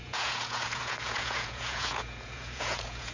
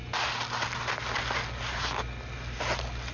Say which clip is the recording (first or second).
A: second